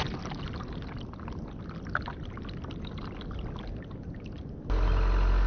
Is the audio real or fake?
real